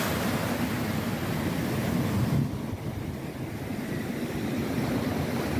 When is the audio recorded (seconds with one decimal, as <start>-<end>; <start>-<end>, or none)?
0.0-5.6